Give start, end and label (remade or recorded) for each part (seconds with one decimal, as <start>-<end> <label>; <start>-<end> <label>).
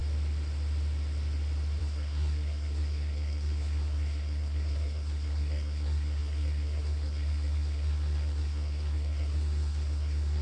0.0-1.8 recorded; 1.8-10.4 remade